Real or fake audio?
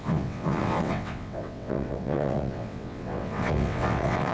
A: fake